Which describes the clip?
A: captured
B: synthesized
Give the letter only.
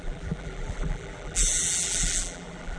B